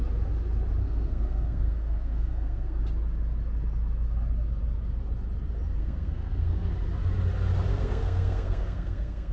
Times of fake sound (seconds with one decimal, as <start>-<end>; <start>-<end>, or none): 0.8-2.8; 5.8-6.7; 7.7-9.3